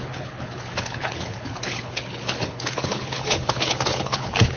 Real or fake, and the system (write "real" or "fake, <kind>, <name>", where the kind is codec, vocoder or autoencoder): fake, codec, HILCodec